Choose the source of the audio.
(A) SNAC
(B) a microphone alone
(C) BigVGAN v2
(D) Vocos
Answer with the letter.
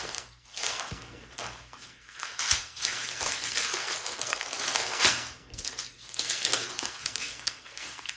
A